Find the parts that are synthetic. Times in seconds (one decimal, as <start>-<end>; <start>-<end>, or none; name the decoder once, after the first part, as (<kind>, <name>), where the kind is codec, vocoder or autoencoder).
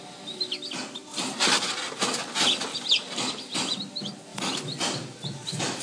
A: 1.1-1.7 (vocoder, BigVGAN v2); 2.7-3.3; 4.3-5.8